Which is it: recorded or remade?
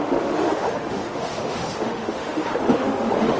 remade